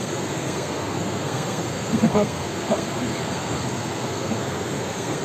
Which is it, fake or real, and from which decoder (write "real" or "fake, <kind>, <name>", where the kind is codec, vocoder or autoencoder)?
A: fake, codec, SNAC